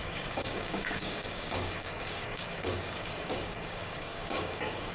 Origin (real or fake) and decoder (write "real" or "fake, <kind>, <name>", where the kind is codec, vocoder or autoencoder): fake, codec, DAC